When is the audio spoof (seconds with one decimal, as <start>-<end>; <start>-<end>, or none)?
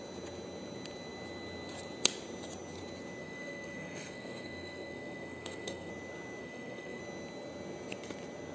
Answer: 3.2-5.9; 6.4-7.0